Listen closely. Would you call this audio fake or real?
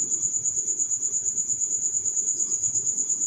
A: fake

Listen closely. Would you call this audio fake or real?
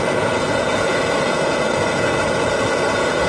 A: fake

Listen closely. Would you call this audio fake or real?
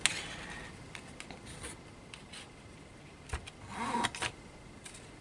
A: real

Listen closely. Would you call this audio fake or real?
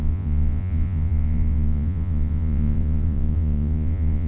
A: fake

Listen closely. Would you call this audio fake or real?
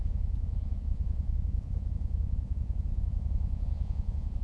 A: fake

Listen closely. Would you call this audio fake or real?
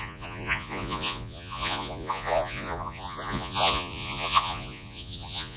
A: fake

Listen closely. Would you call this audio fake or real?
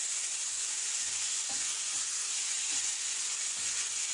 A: fake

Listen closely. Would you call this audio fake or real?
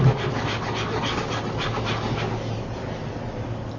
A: real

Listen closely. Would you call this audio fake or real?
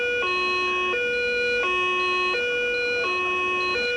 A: real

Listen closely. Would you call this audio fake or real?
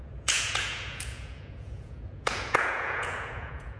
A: fake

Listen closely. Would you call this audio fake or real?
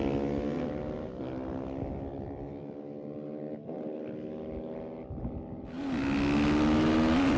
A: real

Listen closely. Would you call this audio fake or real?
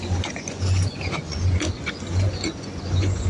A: fake